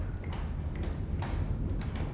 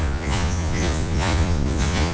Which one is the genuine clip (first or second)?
first